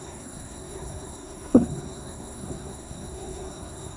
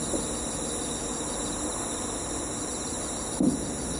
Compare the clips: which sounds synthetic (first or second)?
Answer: first